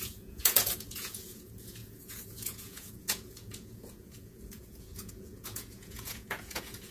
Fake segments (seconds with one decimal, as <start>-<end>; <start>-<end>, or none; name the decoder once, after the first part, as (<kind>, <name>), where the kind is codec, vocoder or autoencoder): 0.0-6.9 (vocoder, Vocos)